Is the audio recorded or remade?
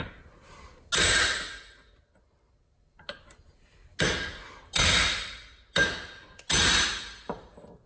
recorded